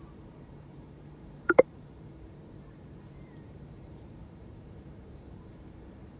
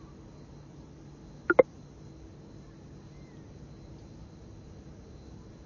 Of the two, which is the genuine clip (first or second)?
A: second